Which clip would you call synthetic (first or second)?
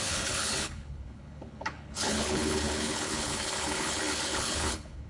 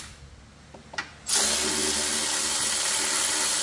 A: first